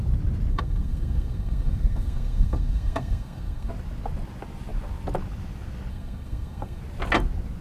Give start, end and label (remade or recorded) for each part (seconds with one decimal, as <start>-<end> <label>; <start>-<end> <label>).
0.0-0.5 recorded; 0.5-3.7 remade; 3.7-5.9 recorded; 5.9-6.8 remade; 6.8-7.6 recorded